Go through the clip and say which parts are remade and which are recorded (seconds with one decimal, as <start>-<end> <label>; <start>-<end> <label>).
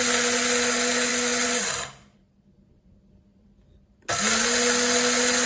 0.0-1.1 recorded; 1.1-4.0 remade; 4.0-5.5 recorded